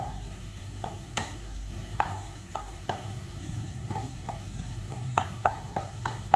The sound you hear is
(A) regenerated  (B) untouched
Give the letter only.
A